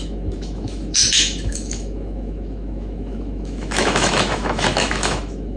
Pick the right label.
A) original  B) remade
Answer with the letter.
B